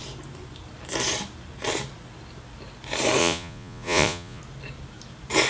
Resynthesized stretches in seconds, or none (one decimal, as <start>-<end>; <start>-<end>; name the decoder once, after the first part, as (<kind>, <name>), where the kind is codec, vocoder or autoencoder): 3.2-4.4 (vocoder, Vocos)